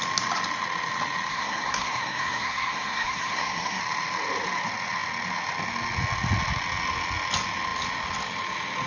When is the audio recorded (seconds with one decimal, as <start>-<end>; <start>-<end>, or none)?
0.0-1.3; 3.8-8.9